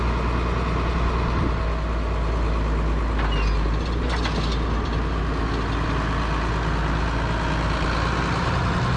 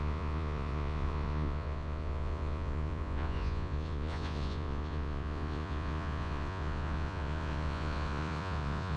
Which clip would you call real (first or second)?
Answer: first